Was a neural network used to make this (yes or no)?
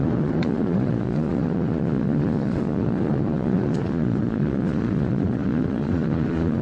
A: yes